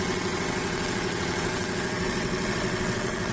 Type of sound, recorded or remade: remade